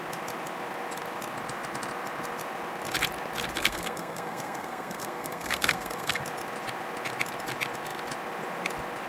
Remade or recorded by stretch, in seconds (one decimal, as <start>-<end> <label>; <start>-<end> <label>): 0.0-3.6 recorded; 3.6-6.2 remade; 6.2-9.1 recorded